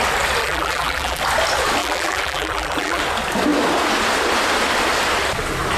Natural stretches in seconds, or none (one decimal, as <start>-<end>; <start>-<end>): 0.0-0.4; 1.2-1.8; 3.0-5.8